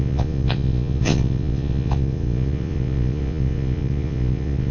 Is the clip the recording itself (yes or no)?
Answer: no